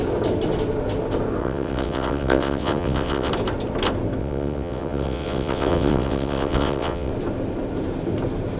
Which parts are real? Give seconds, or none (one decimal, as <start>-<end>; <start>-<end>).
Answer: 0.0-1.4; 3.3-4.2; 7.1-8.6